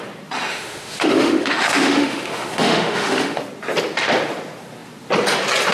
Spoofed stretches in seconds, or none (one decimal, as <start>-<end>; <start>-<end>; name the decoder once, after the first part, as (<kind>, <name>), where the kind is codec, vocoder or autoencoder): 0.5-3.4 (autoencoder, DAC-VAE)